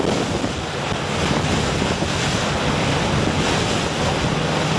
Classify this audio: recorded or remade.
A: recorded